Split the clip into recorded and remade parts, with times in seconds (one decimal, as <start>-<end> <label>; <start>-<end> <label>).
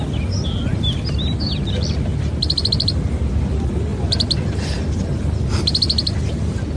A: 0.0-6.8 recorded